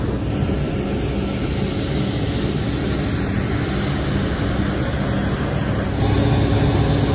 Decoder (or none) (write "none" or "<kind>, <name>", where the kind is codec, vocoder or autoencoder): none